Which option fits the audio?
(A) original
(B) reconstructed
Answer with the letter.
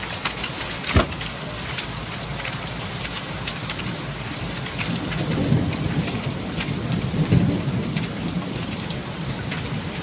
A